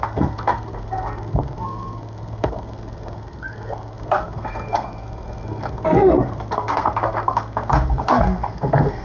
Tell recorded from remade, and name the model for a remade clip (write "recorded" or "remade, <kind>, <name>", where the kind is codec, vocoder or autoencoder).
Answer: remade, codec, SNAC